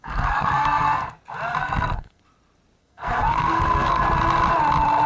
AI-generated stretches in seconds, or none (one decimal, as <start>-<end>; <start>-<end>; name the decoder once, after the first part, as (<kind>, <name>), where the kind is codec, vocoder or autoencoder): 0.0-1.1 (codec, SNAC); 1.6-2.2; 2.8-4.0